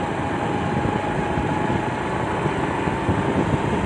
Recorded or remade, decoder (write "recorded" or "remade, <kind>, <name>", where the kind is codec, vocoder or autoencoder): recorded